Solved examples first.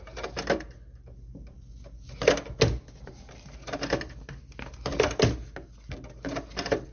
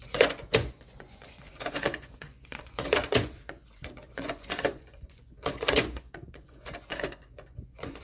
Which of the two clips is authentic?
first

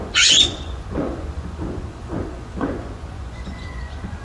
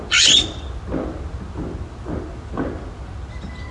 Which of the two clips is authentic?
second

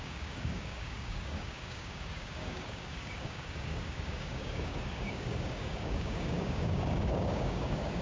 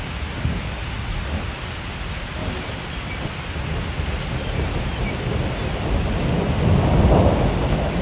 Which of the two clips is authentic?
second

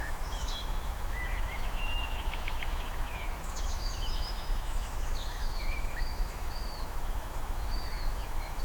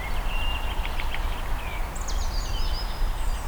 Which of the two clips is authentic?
second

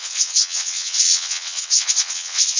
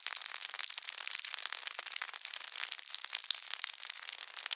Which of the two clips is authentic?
second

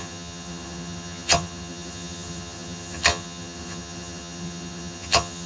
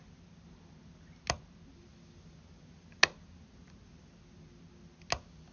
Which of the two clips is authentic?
second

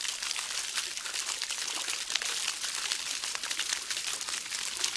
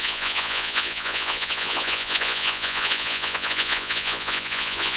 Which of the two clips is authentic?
first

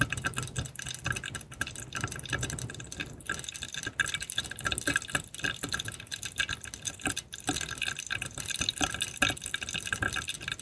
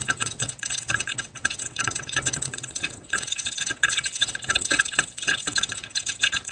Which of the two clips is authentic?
first